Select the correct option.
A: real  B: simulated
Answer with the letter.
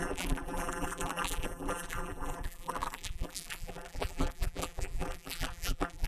B